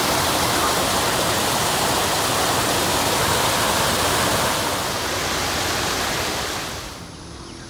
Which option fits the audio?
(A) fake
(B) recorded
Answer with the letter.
B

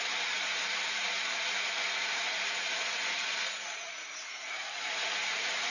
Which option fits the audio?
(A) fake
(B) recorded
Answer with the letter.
A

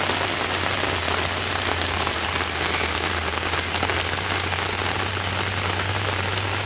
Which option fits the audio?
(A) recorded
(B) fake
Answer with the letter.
A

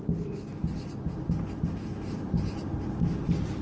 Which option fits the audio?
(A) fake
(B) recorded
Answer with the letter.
B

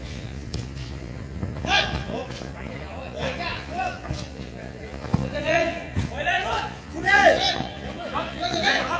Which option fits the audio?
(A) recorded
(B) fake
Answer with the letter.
B